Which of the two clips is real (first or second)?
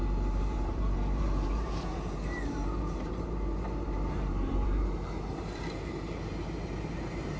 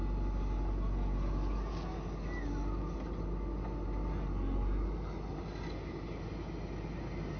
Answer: second